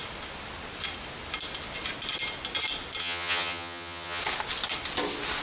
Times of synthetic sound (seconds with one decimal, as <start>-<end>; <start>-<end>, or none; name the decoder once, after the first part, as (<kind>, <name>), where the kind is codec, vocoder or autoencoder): 3.0-4.2 (vocoder, HiFi-GAN)